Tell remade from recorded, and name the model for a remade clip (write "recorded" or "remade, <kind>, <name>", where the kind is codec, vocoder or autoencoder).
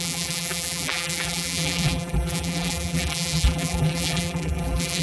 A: remade, vocoder, BigVGAN v2